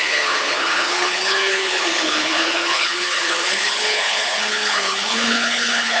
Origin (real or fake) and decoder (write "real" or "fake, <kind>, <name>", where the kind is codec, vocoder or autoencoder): fake, codec, HILCodec